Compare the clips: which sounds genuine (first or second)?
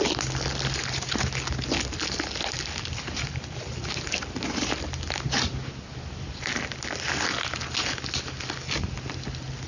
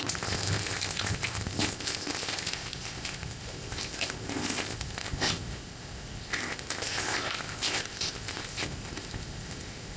first